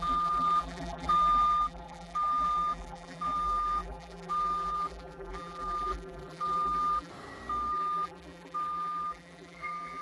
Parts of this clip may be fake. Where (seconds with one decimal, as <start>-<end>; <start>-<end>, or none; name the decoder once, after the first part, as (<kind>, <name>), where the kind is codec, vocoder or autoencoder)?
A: 0.0-7.1 (vocoder, BigVGAN v2); 7.7-10.0